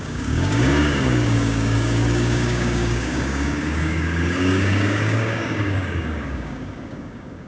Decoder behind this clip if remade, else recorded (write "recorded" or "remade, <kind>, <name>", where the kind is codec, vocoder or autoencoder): remade, codec, DAC